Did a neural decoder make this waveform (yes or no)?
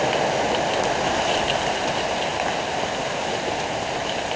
no